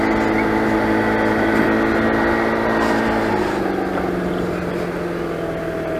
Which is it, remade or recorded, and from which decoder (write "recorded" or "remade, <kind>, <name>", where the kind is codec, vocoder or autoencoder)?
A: recorded